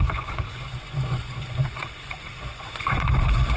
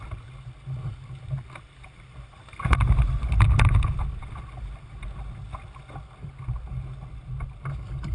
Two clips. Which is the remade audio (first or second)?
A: first